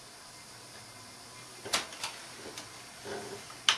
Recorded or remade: recorded